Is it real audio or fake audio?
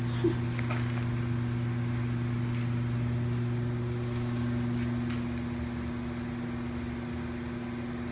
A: real